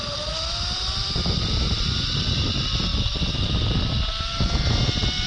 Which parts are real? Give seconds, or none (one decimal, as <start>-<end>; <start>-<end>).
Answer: 2.3-2.9; 3.5-5.3